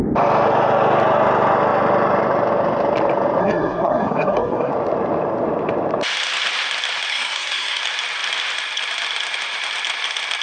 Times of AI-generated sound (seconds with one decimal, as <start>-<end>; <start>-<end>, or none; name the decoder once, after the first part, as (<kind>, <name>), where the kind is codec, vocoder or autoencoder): 3.4-4.7 (codec, SNAC); 7.1-7.8